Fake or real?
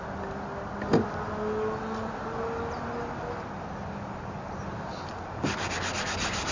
real